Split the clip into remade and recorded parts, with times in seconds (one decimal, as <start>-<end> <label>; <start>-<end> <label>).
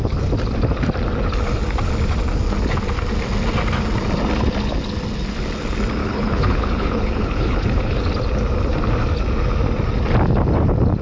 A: 0.0-6.0 recorded; 6.0-8.0 remade; 8.0-11.0 recorded